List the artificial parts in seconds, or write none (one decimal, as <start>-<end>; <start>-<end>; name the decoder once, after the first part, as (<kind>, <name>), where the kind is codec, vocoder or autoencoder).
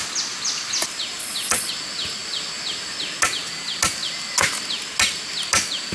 1.2-1.7 (vocoder, Vocos)